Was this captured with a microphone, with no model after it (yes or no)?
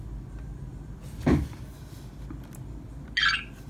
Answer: yes